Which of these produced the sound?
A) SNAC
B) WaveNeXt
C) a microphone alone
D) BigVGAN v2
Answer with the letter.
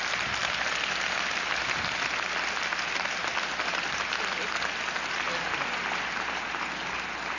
C